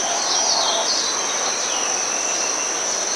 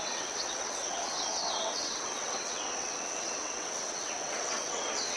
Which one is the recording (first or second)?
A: first